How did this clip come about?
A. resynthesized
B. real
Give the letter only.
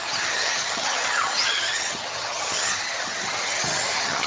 A